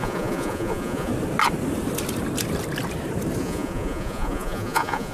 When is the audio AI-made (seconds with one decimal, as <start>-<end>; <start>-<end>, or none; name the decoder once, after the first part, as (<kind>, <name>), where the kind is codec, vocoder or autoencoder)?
0.0-1.1 (vocoder, Vocos); 3.4-5.1